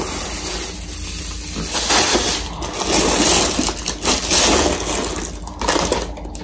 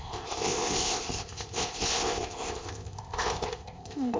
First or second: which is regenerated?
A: second